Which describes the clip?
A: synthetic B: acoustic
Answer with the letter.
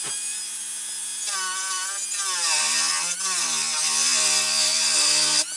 B